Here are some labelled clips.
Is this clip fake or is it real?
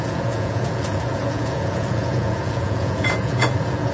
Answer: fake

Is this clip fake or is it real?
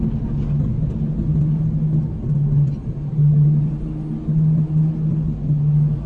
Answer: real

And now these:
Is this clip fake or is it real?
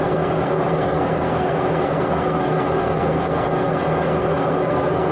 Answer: fake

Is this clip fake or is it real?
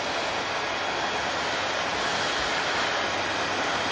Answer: real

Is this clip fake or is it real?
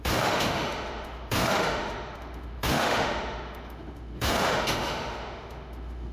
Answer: fake